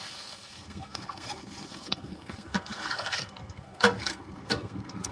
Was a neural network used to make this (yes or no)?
yes